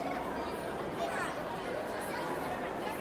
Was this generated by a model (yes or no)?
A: no